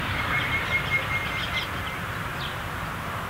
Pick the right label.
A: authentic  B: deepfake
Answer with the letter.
A